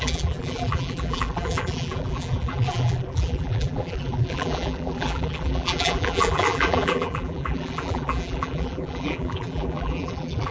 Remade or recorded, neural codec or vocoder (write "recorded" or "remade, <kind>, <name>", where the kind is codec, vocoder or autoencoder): remade, vocoder, BigVGAN v2